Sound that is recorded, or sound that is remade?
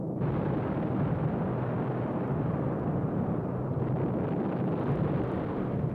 recorded